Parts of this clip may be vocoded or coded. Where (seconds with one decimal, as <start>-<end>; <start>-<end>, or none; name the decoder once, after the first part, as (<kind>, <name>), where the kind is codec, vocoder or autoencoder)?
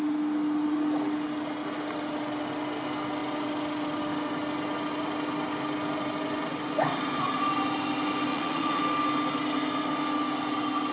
8.3-8.8 (vocoder, Vocos)